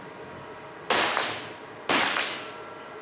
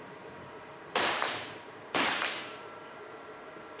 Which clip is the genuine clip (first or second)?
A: first